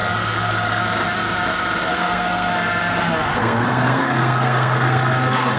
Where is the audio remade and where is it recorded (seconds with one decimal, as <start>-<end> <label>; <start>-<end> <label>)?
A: 0.0-0.8 remade; 0.8-1.9 recorded; 1.9-2.5 remade; 2.5-3.3 recorded; 3.3-5.6 remade